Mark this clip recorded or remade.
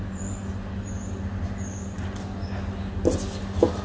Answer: recorded